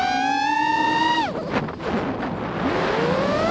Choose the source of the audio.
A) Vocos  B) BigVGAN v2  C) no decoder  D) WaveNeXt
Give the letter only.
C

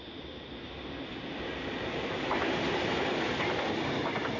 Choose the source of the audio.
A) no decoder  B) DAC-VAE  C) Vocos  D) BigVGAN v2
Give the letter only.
A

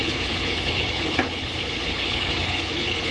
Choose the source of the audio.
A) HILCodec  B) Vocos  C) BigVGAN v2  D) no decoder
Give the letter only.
A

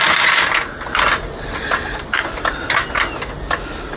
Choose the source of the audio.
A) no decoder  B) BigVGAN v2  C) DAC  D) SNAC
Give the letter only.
A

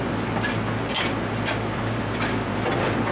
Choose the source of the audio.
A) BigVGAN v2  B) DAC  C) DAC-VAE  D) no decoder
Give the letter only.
D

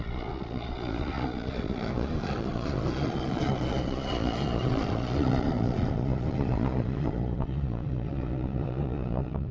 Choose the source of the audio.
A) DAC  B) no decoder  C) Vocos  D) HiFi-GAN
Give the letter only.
C